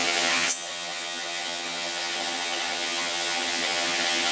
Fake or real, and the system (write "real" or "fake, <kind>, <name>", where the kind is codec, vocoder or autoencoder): fake, vocoder, HiFi-GAN